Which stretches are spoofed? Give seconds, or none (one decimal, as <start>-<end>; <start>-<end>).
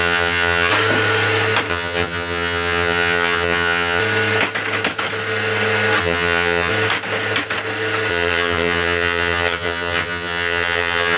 0.0-0.7; 1.7-4.0; 6.0-6.7; 8.1-11.2